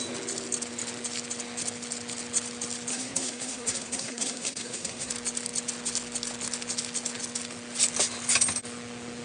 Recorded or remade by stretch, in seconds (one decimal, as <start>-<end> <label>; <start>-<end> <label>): 0.0-2.9 recorded; 2.9-5.1 remade; 5.1-9.2 recorded